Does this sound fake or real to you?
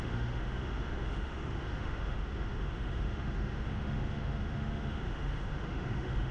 fake